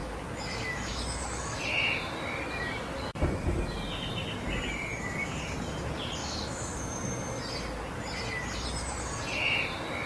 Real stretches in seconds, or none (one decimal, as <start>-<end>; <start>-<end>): 1.6-6.2; 7.4-10.1